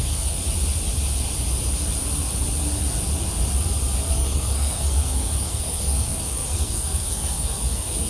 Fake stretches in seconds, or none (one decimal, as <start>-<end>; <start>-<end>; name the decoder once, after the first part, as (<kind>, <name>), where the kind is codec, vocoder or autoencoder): 0.0-0.4 (codec, SNAC); 4.1-8.1